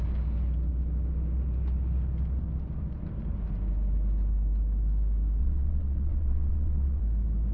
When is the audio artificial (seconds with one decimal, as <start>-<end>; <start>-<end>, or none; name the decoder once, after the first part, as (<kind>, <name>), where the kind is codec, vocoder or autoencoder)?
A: 5.4-7.0 (vocoder, WaveNeXt)